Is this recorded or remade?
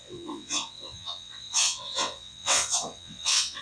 remade